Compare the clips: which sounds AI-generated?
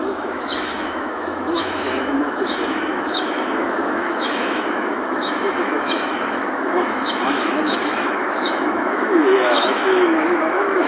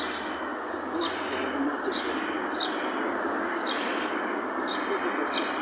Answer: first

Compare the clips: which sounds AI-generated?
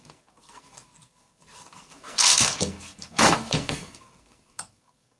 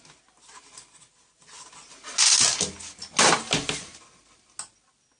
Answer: first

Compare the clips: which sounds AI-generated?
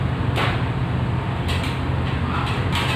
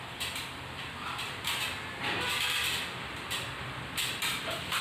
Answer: second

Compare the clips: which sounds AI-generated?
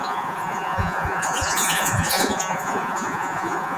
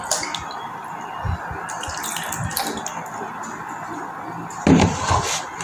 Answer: first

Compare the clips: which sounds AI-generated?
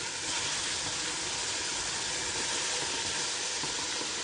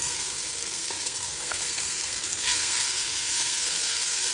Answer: second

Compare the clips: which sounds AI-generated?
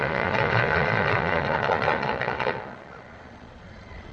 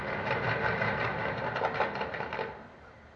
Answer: first